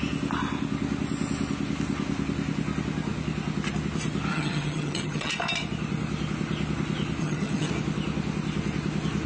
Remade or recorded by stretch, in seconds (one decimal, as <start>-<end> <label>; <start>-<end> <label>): 0.0-4.3 recorded; 4.3-5.3 remade; 5.3-7.2 recorded; 7.2-7.7 remade; 7.7-9.3 recorded